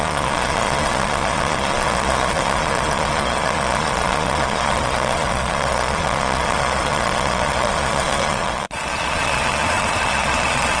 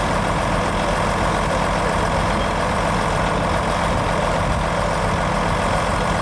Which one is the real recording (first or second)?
second